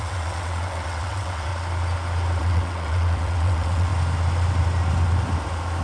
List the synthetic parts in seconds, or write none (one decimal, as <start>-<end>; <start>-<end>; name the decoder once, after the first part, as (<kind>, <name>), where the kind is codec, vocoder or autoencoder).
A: 0.0-1.5 (vocoder, WaveNeXt); 2.4-3.9